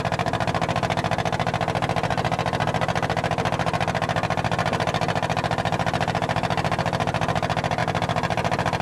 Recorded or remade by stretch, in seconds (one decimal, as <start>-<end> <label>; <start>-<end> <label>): 0.0-8.8 recorded